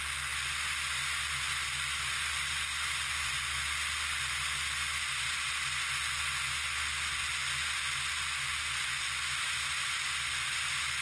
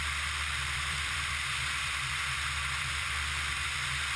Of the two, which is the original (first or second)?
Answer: first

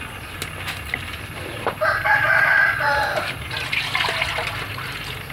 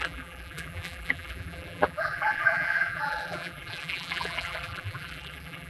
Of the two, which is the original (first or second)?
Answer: first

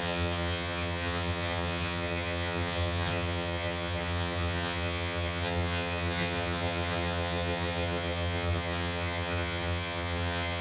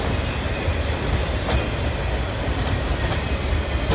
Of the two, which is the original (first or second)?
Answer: second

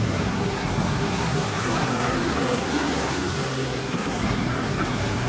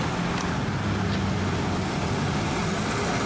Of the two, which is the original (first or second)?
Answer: second